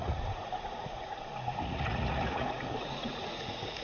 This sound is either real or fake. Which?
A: fake